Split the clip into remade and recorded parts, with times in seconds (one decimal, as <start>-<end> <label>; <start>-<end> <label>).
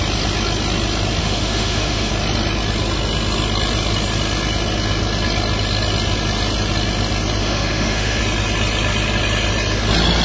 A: 0.0-1.2 recorded; 1.2-2.1 remade; 2.1-7.4 recorded; 7.4-8.2 remade; 8.2-10.2 recorded